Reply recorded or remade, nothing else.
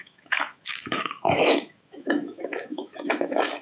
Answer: remade